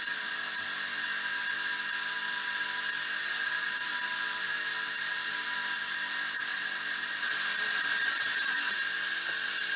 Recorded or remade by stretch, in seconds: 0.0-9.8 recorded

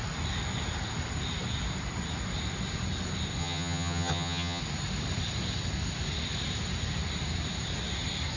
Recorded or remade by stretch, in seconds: 0.0-3.4 recorded; 3.4-4.6 remade; 4.6-8.4 recorded

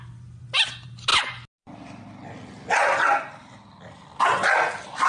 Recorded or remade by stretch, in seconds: 0.0-5.1 recorded

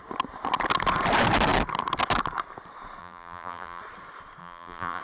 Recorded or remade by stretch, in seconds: 0.0-3.0 recorded; 3.0-3.8 remade; 3.8-4.4 recorded; 4.4-5.0 remade

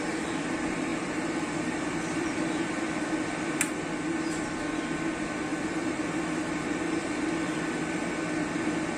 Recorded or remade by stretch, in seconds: 0.0-0.9 recorded; 0.9-2.3 remade; 2.3-5.5 recorded; 5.5-8.1 remade; 8.1-9.0 recorded